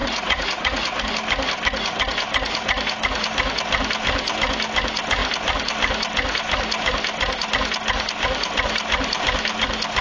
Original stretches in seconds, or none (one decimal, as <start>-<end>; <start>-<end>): 1.0-10.0